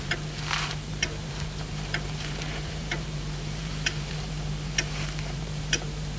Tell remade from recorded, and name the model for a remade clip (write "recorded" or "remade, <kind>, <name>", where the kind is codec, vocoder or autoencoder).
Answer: remade, vocoder, BigVGAN v2